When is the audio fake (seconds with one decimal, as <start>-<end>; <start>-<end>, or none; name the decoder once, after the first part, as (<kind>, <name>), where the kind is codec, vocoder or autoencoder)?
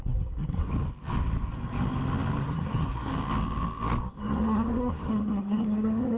0.0-0.7 (codec, SNAC); 2.4-3.1; 4.1-6.2